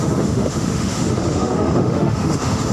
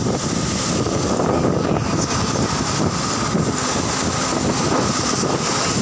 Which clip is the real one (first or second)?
second